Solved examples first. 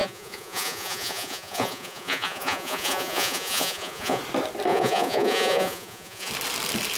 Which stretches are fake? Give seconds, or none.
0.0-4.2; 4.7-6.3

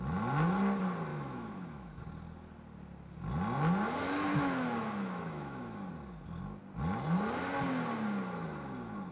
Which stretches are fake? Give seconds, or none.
1.1-2.0; 4.3-5.9

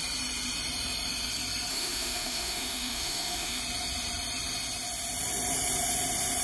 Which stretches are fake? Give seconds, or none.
1.7-3.6

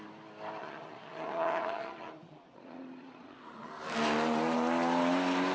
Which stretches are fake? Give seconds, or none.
0.6-3.7

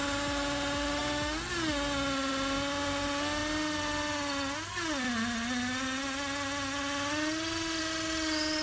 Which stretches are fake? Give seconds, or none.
none